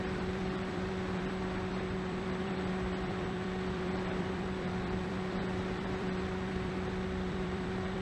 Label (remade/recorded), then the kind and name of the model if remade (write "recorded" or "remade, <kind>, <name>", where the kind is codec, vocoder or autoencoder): remade, vocoder, BigVGAN v2